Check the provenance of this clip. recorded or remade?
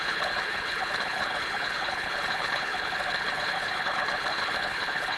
remade